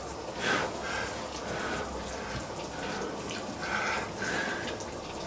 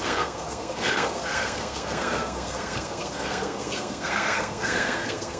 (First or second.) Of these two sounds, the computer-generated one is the second